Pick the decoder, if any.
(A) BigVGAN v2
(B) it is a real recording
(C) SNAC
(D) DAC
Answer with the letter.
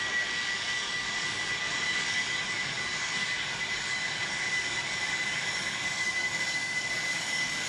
D